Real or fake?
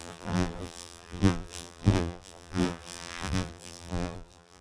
fake